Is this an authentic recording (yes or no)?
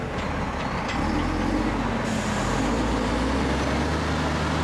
yes